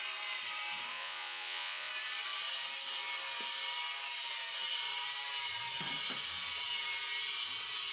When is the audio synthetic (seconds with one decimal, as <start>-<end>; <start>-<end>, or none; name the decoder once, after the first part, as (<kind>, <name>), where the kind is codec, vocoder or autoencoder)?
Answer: 0.9-1.9 (vocoder, Vocos)